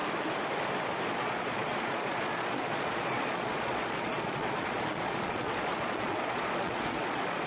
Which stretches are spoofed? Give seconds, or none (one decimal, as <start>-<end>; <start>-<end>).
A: 1.1-7.5